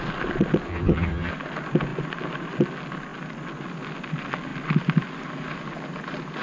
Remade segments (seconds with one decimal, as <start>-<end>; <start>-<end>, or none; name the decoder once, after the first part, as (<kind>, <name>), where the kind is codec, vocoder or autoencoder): 0.7-1.3 (vocoder, HiFi-GAN)